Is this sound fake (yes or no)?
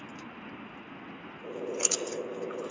no